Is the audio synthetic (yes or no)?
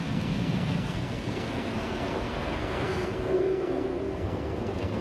yes